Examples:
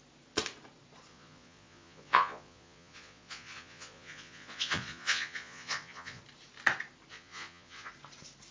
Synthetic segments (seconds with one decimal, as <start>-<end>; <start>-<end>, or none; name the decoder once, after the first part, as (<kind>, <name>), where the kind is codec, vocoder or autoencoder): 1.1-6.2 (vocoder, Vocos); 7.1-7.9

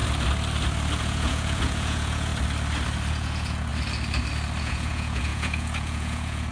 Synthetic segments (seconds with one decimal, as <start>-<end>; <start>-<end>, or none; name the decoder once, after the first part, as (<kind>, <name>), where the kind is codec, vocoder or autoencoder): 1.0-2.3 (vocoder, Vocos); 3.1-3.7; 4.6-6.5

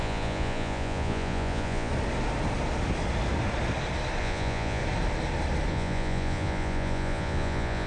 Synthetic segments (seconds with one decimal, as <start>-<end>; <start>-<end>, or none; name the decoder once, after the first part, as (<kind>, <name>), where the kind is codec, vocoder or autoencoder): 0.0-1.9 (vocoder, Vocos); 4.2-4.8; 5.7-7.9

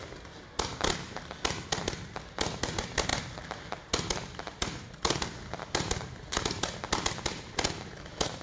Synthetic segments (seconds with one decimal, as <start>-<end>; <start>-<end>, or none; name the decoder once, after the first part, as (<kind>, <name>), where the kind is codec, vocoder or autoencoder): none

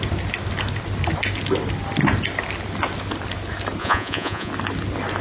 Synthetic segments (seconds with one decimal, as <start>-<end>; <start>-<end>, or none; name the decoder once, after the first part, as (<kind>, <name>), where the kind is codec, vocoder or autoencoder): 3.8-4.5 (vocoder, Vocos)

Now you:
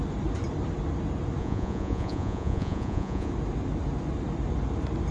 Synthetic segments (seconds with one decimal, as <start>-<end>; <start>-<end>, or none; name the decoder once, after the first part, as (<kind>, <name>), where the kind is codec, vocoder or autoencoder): 1.4-3.3 (vocoder, Vocos)

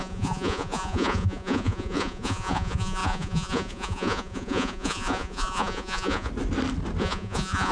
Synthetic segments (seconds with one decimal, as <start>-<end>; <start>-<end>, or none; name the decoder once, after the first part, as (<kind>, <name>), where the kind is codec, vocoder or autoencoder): 0.0-6.3 (vocoder, Vocos); 7.0-7.7